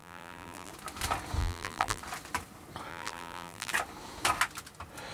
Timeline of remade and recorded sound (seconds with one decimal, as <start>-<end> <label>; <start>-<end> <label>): 0.0-0.7 remade; 0.7-1.4 recorded; 1.4-2.0 remade; 2.0-2.9 recorded; 2.9-3.7 remade; 3.7-5.1 recorded